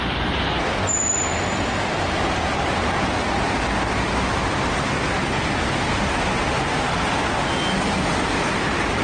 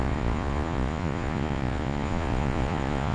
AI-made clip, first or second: second